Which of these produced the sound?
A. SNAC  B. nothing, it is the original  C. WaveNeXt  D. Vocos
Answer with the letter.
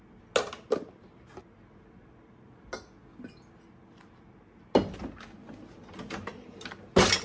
B